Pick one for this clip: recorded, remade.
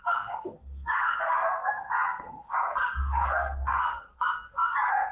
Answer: remade